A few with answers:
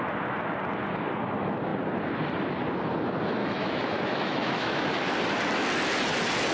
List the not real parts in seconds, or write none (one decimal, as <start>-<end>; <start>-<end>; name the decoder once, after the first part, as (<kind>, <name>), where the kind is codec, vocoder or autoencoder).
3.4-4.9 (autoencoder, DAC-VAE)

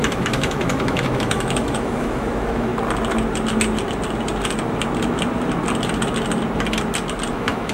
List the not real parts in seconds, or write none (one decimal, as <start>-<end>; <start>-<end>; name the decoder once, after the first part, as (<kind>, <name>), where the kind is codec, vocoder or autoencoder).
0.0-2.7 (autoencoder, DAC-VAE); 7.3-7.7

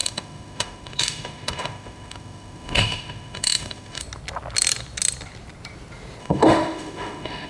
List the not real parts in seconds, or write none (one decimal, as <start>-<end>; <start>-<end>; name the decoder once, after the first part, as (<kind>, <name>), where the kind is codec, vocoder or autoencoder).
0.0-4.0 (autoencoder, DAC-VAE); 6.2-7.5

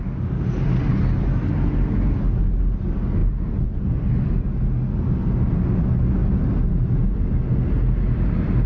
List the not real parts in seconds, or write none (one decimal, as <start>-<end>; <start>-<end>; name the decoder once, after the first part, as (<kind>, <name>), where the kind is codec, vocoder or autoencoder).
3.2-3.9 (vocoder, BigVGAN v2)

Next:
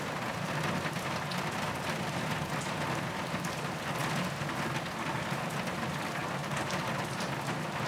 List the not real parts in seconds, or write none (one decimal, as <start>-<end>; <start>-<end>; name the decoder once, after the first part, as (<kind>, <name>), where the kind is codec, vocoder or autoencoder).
none

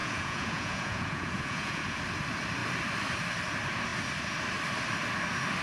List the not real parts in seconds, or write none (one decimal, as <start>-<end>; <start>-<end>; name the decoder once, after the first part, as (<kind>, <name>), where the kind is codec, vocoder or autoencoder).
0.0-2.0 (vocoder, Vocos)